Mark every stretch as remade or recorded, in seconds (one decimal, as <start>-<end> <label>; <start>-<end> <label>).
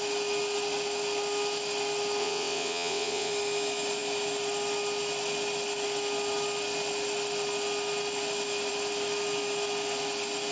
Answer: 0.0-2.2 recorded; 2.2-3.3 remade; 3.3-10.5 recorded